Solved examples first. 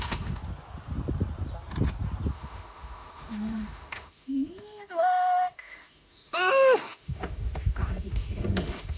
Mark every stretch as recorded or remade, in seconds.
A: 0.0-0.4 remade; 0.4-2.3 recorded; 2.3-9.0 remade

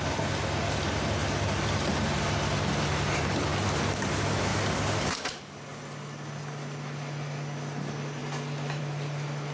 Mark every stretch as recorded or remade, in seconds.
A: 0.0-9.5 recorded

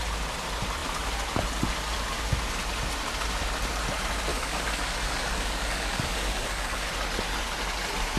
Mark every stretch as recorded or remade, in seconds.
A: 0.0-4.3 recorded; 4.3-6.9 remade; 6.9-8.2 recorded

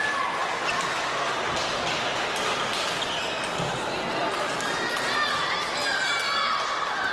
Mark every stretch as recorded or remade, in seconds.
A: 0.0-7.1 recorded